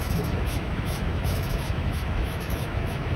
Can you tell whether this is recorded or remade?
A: remade